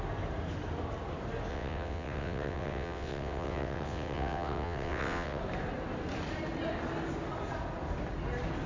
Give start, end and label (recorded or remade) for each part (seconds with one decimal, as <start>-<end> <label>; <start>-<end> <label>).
0.0-1.5 recorded; 1.5-5.4 remade; 5.4-8.7 recorded